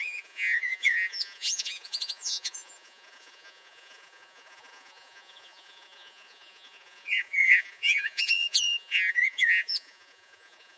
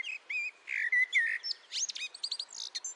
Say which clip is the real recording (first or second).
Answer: second